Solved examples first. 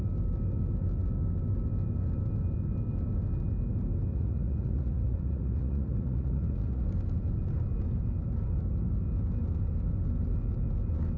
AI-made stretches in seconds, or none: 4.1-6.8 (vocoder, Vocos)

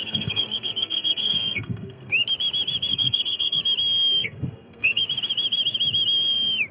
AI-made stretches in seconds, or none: 0.0-2.1 (codec, SNAC); 2.9-3.6; 4.2-5.0

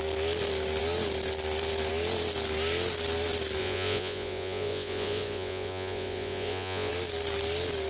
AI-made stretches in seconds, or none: 3.6-6.9 (vocoder, Vocos)